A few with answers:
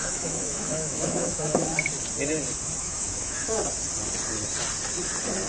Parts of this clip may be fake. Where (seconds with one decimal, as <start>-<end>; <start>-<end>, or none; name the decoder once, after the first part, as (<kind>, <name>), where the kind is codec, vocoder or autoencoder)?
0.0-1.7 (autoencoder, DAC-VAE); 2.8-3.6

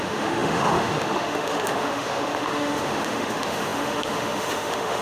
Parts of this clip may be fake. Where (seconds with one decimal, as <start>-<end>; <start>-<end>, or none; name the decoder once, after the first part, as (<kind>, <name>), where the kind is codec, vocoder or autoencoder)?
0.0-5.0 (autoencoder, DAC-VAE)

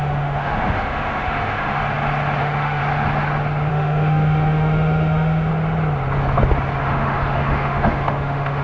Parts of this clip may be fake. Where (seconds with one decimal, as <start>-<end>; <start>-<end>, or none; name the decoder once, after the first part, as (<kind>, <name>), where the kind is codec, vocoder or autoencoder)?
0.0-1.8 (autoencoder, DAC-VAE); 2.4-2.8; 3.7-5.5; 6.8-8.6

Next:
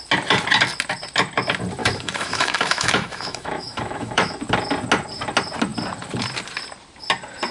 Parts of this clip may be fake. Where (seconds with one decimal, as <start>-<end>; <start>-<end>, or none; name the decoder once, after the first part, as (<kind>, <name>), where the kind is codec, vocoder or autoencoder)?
1.8-4.4 (autoencoder, DAC-VAE)

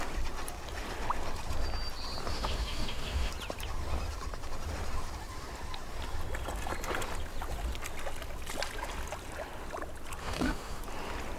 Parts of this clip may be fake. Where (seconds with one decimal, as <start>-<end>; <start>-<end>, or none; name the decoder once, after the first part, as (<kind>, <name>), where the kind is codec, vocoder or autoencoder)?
2.3-3.3 (autoencoder, DAC-VAE); 10.2-10.8

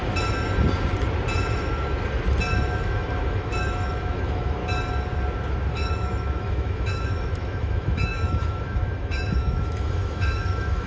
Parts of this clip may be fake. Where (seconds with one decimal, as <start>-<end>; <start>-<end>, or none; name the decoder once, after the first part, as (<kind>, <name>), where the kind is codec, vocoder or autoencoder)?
2.8-4.6 (autoencoder, DAC-VAE); 5.7-10.9